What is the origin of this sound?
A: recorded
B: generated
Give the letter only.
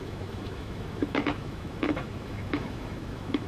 B